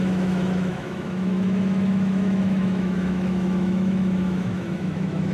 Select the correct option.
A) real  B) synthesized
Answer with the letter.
B